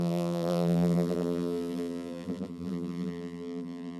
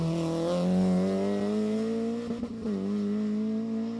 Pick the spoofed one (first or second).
first